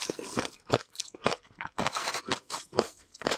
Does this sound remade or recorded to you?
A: remade